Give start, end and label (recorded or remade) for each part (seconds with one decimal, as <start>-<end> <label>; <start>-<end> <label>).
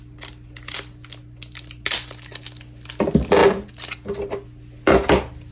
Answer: 0.0-5.5 recorded